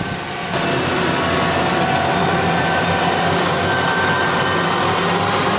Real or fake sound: real